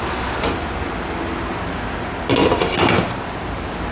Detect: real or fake real